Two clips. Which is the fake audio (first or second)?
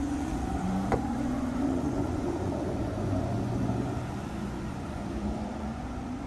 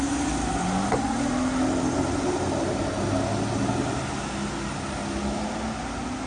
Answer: first